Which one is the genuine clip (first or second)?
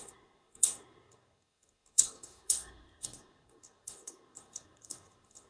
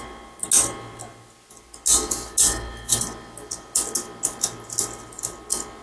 second